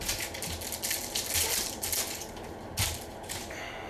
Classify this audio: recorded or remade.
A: recorded